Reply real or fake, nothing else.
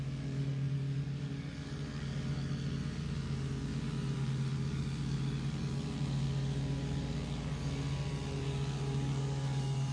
fake